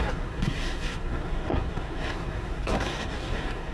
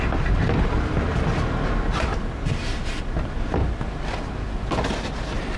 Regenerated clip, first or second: first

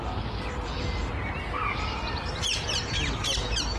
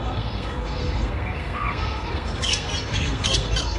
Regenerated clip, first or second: second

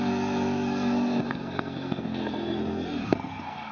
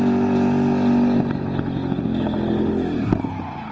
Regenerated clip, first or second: first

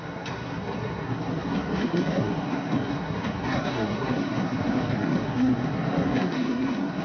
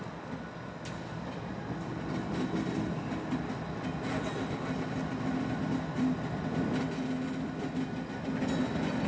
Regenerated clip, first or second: first